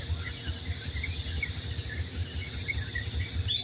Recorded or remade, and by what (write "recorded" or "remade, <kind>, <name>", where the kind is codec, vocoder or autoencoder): recorded